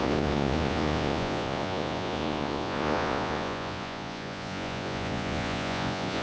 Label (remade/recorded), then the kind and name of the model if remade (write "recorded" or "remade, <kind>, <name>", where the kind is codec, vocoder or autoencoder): remade, vocoder, Vocos